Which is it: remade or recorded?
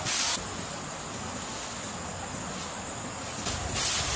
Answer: recorded